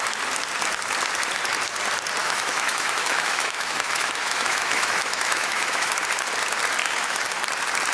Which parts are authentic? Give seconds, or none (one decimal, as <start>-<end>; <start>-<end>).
0.0-2.2; 5.9-6.8; 7.3-7.9